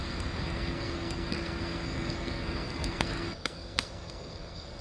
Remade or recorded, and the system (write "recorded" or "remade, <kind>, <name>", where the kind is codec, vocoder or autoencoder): remade, codec, SNAC